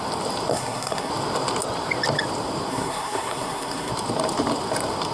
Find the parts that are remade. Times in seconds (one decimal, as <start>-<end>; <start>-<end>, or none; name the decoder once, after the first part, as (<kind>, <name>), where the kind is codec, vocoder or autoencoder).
0.5-1.1 (codec, SNAC); 2.7-3.9